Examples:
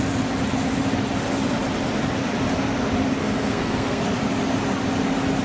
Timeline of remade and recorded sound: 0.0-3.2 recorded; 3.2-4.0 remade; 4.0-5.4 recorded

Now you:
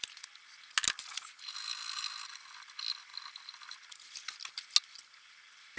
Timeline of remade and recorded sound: 0.0-5.8 recorded

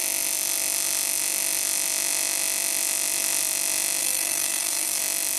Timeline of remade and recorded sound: 0.0-4.0 recorded; 4.0-5.0 remade; 5.0-5.4 recorded

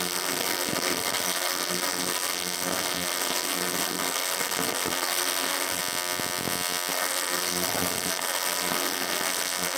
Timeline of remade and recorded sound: 0.0-5.8 remade; 5.8-6.9 recorded; 6.9-9.8 remade

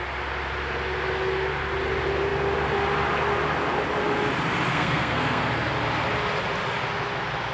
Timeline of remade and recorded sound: 0.0-4.7 recorded; 4.7-5.4 remade; 5.4-7.5 recorded

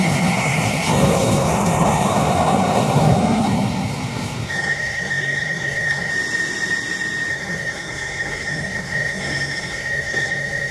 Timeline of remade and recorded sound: 0.0-6.1 remade; 6.1-7.3 recorded; 7.3-10.7 remade

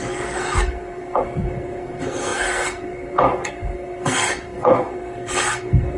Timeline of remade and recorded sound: 0.0-6.0 remade